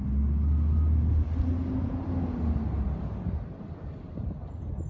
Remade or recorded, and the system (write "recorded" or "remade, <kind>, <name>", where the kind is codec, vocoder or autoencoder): recorded